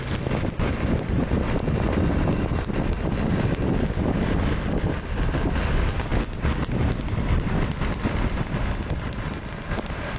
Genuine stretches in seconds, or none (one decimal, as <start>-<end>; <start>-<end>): 0.0-10.2